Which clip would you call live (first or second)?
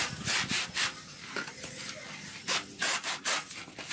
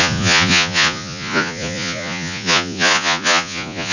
first